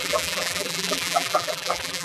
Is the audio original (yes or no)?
no